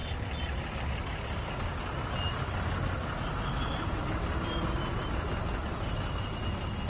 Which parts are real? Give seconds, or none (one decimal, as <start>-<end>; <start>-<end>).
0.0-6.9